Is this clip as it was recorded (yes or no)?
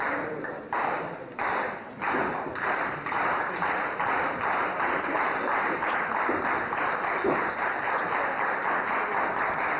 no